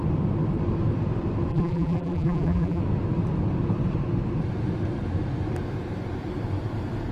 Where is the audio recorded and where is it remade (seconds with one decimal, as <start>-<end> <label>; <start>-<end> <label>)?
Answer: 0.0-1.5 recorded; 1.5-2.8 remade; 2.8-7.1 recorded